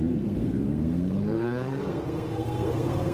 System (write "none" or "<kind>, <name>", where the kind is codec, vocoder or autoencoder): codec, SNAC